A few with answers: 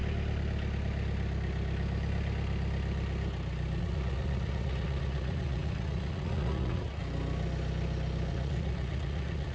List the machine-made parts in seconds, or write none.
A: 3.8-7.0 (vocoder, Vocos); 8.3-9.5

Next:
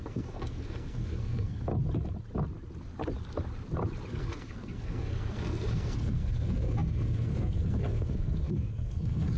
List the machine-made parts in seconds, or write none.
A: 0.0-1.7 (codec, SNAC); 4.1-9.4

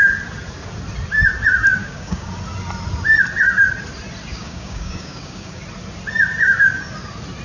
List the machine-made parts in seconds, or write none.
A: 1.8-2.3 (codec, DAC); 4.3-5.6